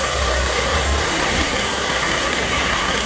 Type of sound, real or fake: fake